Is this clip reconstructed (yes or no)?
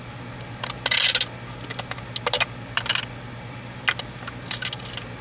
no